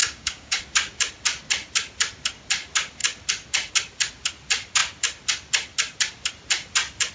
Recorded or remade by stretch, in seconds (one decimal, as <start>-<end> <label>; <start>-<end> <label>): 0.0-0.6 remade; 0.6-7.1 recorded